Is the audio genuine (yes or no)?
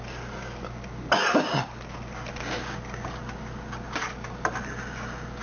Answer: yes